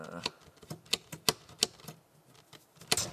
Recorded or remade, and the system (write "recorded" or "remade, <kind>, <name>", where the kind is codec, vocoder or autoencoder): recorded